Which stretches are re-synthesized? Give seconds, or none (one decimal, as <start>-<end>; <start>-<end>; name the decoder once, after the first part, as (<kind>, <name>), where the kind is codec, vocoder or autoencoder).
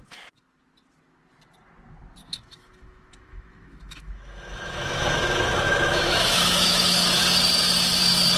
2.2-7.2 (autoencoder, DAC-VAE)